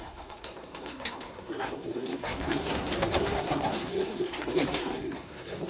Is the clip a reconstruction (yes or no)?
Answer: yes